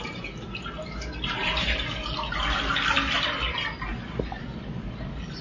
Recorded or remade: recorded